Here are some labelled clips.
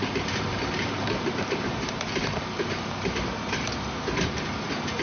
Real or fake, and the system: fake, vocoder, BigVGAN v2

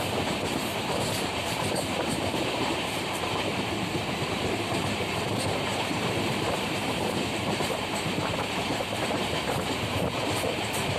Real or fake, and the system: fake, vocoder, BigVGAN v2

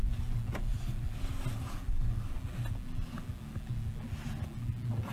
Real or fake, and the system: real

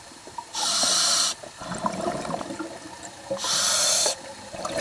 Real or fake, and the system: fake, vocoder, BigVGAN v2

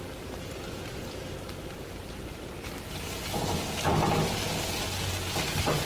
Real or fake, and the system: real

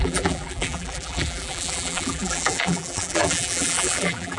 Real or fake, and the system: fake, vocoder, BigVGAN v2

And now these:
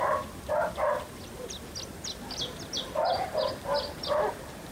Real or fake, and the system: real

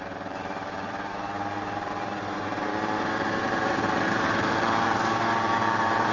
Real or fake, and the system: fake, vocoder, BigVGAN v2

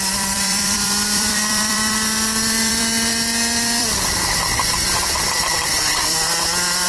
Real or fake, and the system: fake, vocoder, BigVGAN v2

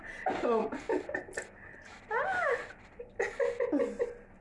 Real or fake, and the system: real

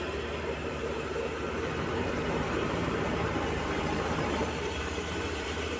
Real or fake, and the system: fake, vocoder, BigVGAN v2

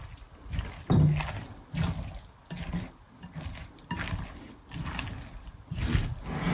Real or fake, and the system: real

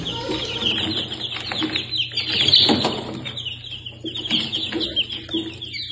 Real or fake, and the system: real